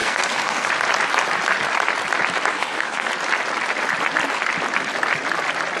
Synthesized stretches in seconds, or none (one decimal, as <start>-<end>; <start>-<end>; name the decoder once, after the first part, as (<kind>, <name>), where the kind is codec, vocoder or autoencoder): 0.0-0.7 (codec, SNAC); 2.5-3.1